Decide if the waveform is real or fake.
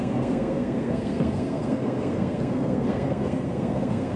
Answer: fake